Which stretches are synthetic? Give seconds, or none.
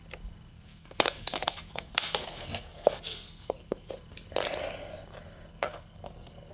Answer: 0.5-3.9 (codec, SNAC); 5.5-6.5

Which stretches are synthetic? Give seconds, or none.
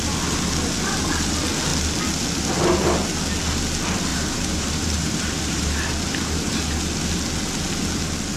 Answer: 4.1-6.6 (vocoder, BigVGAN v2)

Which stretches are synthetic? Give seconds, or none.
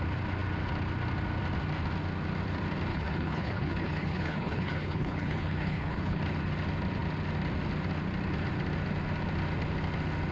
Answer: 2.9-6.2 (codec, HILCodec)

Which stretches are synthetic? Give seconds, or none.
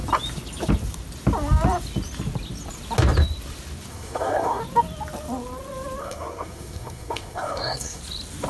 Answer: 3.9-4.6 (codec, SNAC); 6.0-8.0